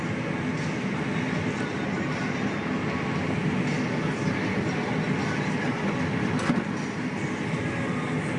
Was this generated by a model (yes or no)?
no